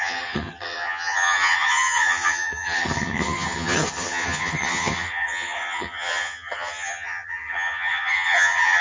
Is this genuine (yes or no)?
no